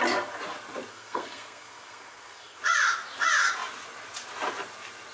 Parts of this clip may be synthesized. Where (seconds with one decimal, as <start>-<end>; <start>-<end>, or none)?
0.9-2.6